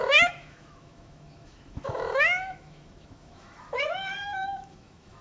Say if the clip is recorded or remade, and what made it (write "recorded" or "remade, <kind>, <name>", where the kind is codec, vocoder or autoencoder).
remade, autoencoder, DAC-VAE